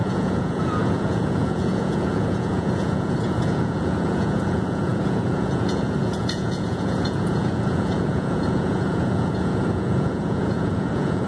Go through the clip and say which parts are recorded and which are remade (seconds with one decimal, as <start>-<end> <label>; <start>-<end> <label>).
0.0-11.3 remade